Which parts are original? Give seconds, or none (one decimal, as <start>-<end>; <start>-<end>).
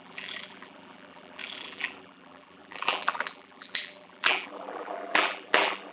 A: none